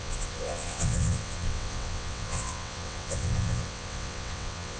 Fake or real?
fake